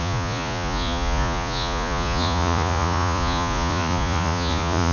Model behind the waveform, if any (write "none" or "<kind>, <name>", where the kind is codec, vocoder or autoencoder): vocoder, Vocos